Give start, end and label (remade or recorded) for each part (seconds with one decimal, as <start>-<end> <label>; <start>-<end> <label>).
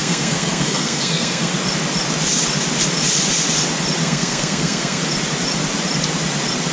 0.0-1.5 remade; 1.5-4.0 recorded; 4.0-5.0 remade; 5.0-6.7 recorded